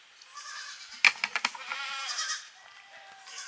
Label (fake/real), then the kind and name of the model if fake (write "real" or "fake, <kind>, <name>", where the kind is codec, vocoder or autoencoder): real